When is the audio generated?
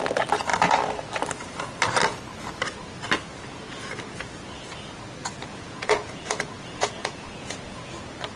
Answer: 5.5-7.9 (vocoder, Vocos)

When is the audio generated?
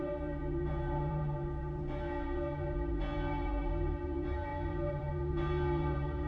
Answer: 0.0-6.3 (vocoder, Vocos)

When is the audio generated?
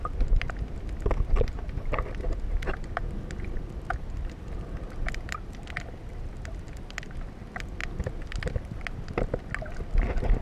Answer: none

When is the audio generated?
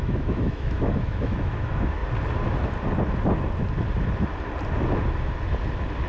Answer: 0.0-2.0 (autoencoder, DAC-VAE)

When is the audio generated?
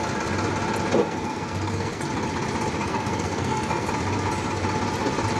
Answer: 1.0-2.1 (codec, SNAC); 2.8-3.9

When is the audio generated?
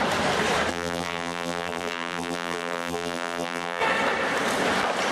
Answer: 0.7-3.8 (vocoder, BigVGAN v2)